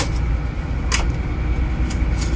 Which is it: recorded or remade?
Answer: recorded